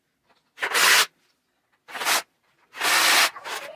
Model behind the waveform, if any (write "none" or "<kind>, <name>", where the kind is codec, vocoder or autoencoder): none